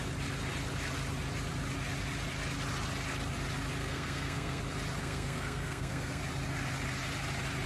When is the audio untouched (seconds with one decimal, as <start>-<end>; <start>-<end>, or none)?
0.0-3.8; 4.6-5.0; 6.2-7.7